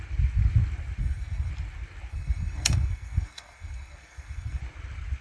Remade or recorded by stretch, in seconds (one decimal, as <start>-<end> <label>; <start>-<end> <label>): 0.0-1.0 recorded; 1.0-1.5 remade; 1.5-2.1 recorded; 2.1-4.6 remade; 4.6-5.2 recorded